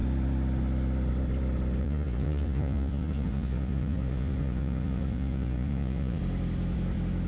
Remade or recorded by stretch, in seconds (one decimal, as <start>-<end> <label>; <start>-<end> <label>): 0.0-1.8 recorded; 1.8-6.2 remade; 6.2-7.3 recorded